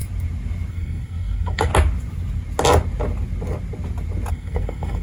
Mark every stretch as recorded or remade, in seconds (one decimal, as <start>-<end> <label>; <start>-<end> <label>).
0.0-0.7 recorded; 0.7-1.7 remade; 1.7-4.3 recorded; 4.3-5.0 remade

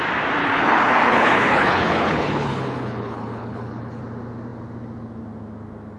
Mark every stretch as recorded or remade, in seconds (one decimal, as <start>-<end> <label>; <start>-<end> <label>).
0.0-0.4 recorded; 0.4-4.0 remade; 4.0-6.0 recorded

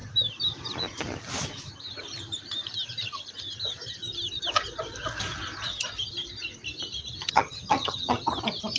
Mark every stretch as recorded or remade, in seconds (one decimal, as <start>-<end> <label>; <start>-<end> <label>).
0.0-7.2 recorded; 7.2-8.3 remade; 8.3-8.8 recorded

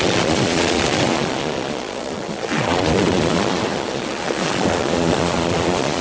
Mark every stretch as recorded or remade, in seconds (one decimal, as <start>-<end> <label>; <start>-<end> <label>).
0.0-6.0 remade

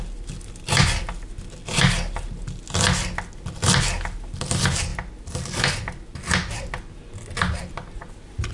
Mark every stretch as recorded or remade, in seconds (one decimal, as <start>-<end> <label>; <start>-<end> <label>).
0.0-8.5 recorded

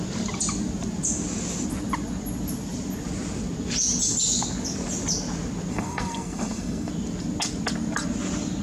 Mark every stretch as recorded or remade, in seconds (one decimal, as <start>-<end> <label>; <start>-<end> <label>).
0.0-5.7 recorded; 5.7-6.9 remade; 6.9-8.6 recorded